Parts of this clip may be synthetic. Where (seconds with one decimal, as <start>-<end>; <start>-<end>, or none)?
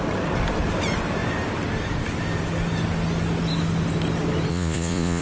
4.5-5.2